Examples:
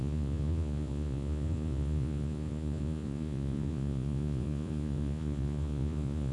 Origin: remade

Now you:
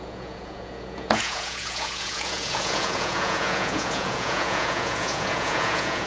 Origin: remade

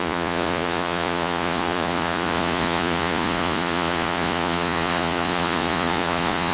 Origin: remade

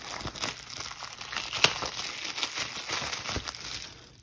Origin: recorded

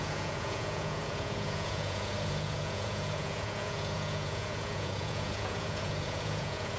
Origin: remade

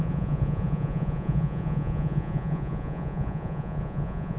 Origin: remade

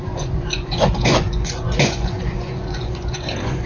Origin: remade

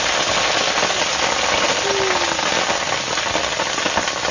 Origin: recorded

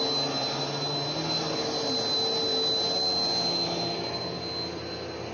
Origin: recorded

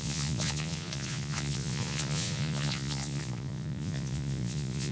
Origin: remade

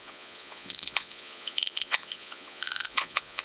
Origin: remade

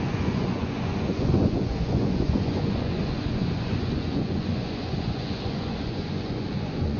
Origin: remade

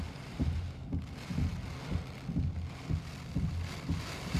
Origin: recorded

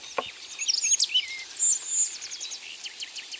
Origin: recorded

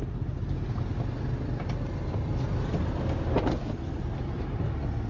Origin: recorded